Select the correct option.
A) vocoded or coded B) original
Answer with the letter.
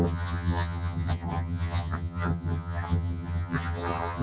A